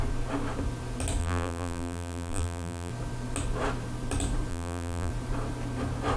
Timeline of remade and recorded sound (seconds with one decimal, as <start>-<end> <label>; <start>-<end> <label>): 0.0-1.2 recorded; 1.2-2.9 remade; 2.9-4.5 recorded; 4.5-5.1 remade; 5.1-6.2 recorded